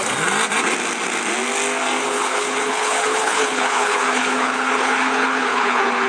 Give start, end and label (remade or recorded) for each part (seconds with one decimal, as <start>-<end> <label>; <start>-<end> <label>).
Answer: 0.0-2.0 recorded; 2.0-6.1 remade